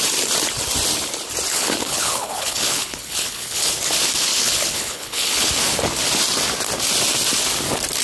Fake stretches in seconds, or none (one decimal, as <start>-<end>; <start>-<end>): 1.5-3.7; 4.3-5.5